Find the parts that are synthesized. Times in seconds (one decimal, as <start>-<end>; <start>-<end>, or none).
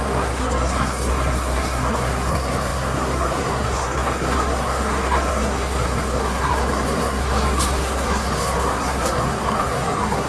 0.0-10.3